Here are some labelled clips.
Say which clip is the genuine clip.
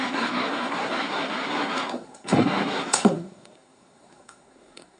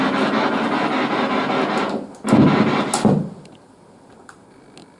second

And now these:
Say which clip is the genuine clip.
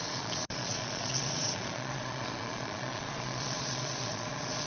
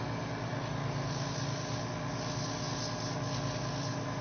second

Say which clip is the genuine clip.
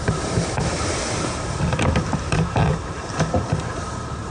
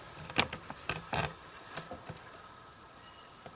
second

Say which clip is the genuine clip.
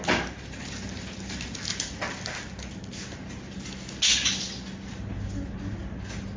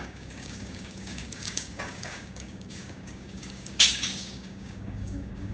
first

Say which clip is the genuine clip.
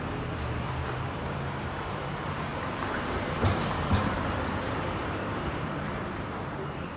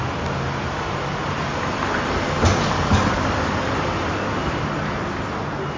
second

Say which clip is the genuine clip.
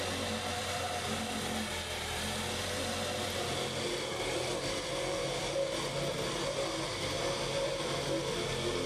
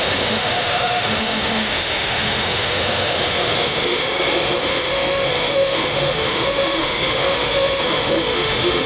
first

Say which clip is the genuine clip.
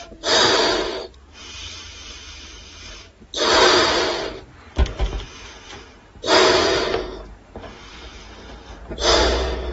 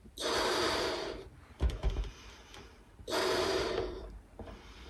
first